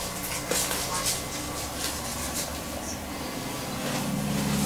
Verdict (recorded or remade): recorded